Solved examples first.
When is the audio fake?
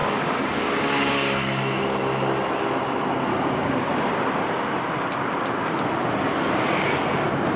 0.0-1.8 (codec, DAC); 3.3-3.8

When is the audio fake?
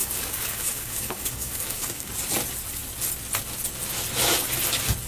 0.0-2.1 (codec, DAC)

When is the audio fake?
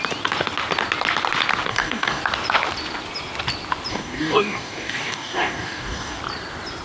1.7-2.2 (codec, DAC); 3.9-6.2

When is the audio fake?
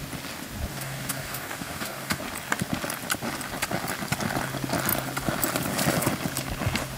0.7-2.2 (codec, DAC)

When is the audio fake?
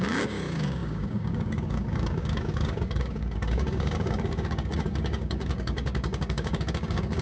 0.0-7.2 (codec, DAC)